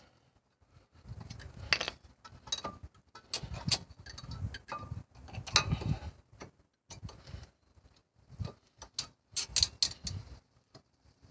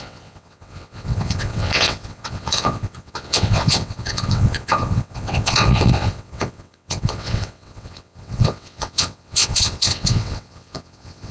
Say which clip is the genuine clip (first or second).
first